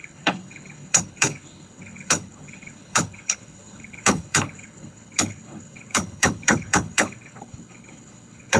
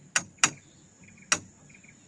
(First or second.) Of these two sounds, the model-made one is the first